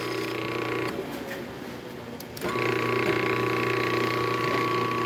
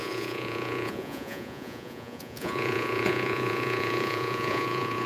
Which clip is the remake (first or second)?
second